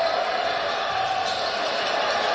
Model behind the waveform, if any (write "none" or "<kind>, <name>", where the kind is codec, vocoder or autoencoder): none